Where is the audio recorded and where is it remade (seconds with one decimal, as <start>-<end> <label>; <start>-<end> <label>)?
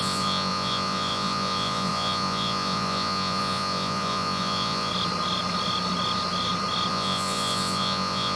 0.0-4.9 remade; 4.9-6.9 recorded; 6.9-8.4 remade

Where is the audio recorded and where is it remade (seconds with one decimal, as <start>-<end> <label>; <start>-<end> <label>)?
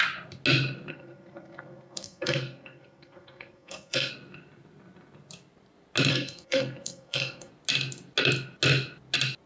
0.0-0.9 recorded; 0.9-4.1 remade; 4.1-6.1 recorded; 6.1-7.5 remade; 7.5-9.5 recorded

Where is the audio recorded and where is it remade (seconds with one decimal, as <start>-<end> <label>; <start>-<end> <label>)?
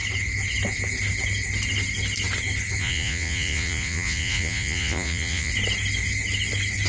0.0-2.8 recorded; 2.8-5.5 remade; 5.5-6.9 recorded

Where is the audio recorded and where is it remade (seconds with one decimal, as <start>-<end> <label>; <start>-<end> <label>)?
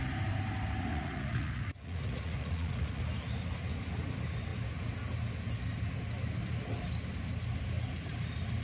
0.0-0.9 recorded; 0.9-3.0 remade; 3.0-8.6 recorded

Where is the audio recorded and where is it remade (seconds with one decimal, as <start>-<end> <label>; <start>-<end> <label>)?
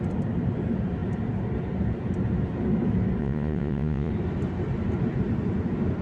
0.0-3.2 recorded; 3.2-4.1 remade; 4.1-6.0 recorded